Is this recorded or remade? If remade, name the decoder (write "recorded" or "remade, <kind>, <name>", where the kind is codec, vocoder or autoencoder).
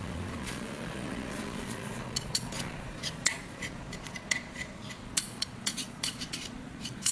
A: remade, vocoder, Vocos